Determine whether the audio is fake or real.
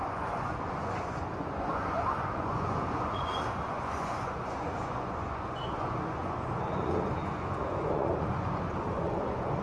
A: fake